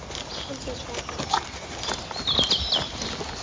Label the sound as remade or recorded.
recorded